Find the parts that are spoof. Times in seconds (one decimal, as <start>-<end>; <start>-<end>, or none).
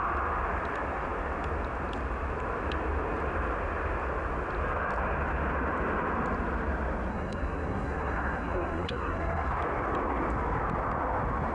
7.1-9.5